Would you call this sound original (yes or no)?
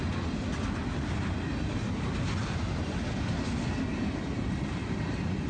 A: yes